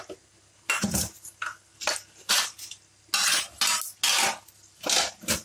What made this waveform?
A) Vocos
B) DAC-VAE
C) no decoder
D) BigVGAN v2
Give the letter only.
C